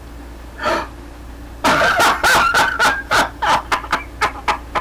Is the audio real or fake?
real